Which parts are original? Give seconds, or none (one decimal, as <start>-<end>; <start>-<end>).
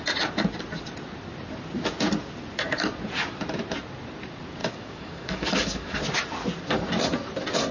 0.0-4.6; 6.0-7.7